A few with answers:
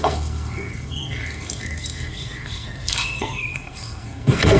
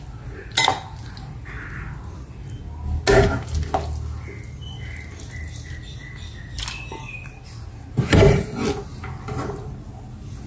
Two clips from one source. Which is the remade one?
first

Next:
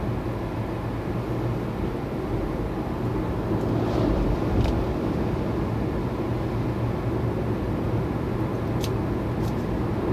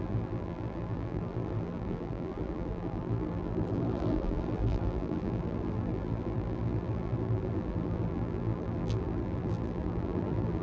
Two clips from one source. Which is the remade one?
second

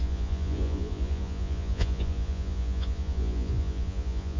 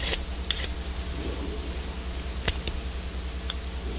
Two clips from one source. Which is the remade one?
first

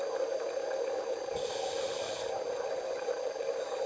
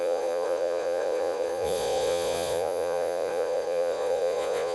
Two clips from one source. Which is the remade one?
second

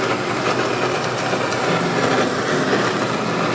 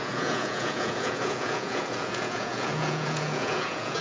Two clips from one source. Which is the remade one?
second